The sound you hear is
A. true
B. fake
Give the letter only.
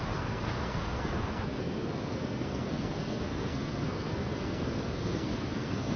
B